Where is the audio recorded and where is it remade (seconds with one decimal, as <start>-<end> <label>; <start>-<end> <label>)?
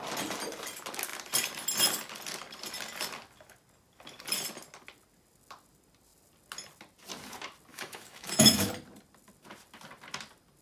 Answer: 0.0-7.7 recorded; 7.7-8.7 remade; 8.7-10.6 recorded